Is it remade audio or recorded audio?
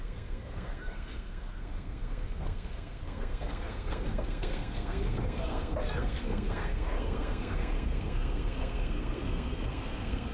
remade